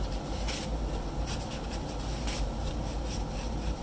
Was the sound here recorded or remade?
recorded